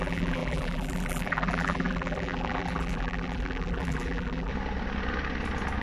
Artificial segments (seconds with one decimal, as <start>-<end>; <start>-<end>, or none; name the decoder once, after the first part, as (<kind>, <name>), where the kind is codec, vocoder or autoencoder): 0.0-4.5 (vocoder, BigVGAN v2)